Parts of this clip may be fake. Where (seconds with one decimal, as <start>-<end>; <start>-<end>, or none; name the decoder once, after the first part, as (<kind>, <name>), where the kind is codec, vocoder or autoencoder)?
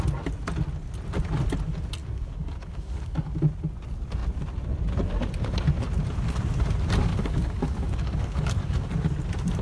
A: 2.0-3.3 (codec, DAC); 7.1-8.9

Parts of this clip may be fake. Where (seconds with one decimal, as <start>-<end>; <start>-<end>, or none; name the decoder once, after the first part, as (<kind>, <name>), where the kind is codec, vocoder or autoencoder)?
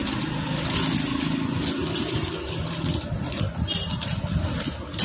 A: none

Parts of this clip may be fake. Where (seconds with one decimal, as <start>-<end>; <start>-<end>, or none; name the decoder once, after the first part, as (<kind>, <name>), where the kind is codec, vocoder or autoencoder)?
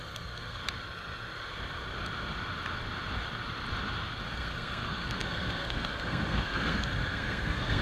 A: 0.0-0.6 (codec, SNAC); 4.3-7.8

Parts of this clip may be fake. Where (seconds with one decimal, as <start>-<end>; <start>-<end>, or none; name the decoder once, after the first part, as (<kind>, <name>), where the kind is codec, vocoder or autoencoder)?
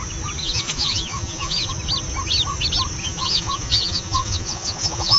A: 0.4-1.7 (vocoder, Vocos); 3.0-5.2